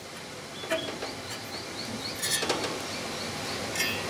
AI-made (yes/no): no